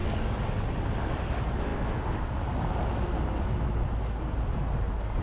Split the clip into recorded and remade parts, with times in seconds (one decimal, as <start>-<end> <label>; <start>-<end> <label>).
0.0-5.2 recorded